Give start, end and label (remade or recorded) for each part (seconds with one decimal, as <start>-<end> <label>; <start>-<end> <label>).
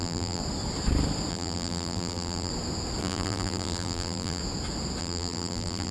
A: 0.0-0.4 remade; 0.4-1.3 recorded; 1.3-2.5 remade; 2.5-3.0 recorded; 3.0-4.4 remade; 4.4-5.0 recorded; 5.0-5.9 remade